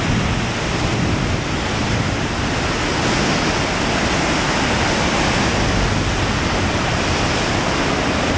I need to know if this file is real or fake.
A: real